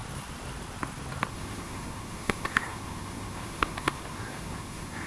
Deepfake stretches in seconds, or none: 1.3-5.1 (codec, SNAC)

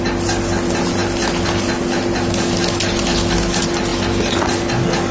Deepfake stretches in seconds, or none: none

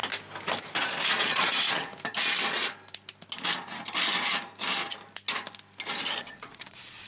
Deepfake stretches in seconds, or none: 1.1-1.9 (vocoder, Vocos); 6.2-7.1

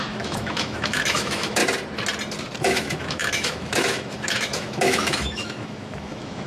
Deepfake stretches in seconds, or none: 0.0-1.6 (autoencoder, DAC-VAE); 2.6-6.5

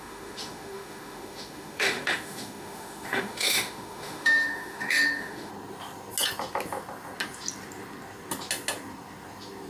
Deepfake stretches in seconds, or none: 0.0-5.5 (autoencoder, DAC-VAE)

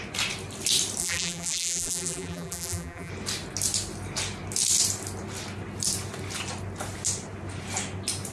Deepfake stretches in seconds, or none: 1.0-3.1 (vocoder, BigVGAN v2)

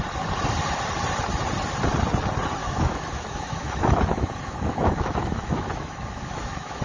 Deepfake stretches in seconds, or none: 2.6-6.8 (autoencoder, DAC-VAE)